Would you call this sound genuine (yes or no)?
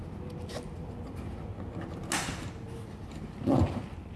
yes